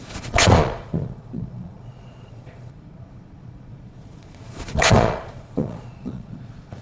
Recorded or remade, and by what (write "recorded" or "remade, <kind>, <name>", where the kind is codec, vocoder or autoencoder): remade, vocoder, Vocos